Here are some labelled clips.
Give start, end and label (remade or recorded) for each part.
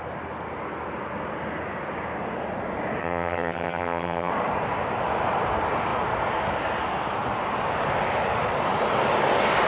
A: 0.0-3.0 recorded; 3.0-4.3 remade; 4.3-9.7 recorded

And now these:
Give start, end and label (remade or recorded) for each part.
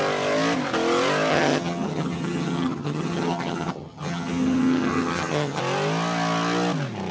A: 0.0-1.3 recorded; 1.3-5.6 remade; 5.6-7.1 recorded